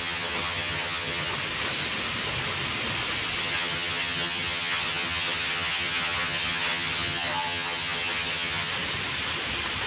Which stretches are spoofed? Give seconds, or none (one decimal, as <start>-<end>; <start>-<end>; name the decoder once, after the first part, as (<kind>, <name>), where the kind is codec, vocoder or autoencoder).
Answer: 0.0-1.3 (vocoder, HiFi-GAN); 3.4-8.7